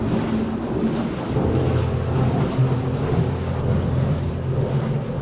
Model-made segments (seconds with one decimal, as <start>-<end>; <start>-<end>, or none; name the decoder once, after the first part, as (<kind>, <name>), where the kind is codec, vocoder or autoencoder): none